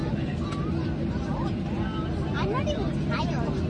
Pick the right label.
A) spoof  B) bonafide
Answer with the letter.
B